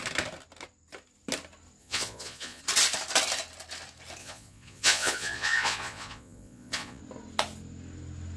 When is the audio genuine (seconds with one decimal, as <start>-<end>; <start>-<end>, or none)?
0.0-1.8; 2.6-4.2; 7.0-8.4